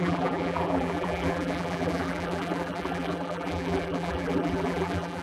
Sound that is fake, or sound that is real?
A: fake